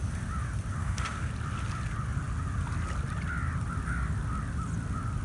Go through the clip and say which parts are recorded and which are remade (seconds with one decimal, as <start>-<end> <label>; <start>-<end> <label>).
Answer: 0.0-0.8 recorded; 0.8-1.3 remade; 1.3-5.2 recorded